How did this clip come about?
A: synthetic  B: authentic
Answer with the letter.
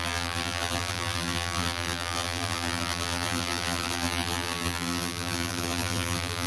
A